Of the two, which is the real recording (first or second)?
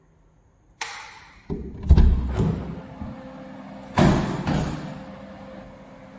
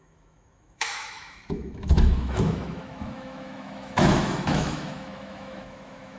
first